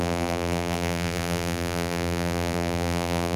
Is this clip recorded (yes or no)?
no